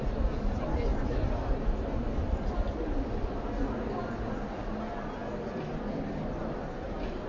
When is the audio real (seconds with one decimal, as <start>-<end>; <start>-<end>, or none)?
0.0-7.3